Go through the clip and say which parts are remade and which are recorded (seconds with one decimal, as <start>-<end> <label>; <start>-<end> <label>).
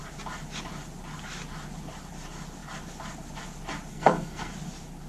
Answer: 0.0-3.9 recorded; 3.9-4.5 remade; 4.5-5.1 recorded